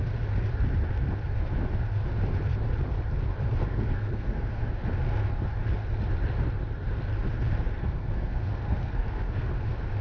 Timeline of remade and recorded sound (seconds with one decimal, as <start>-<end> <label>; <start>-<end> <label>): 0.0-3.6 recorded; 3.6-4.7 remade; 4.7-7.8 recorded; 7.8-9.5 remade; 9.5-10.0 recorded